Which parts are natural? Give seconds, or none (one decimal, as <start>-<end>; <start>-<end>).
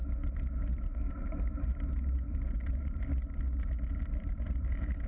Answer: 0.0-1.1; 3.2-3.9